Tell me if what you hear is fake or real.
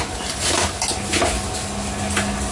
real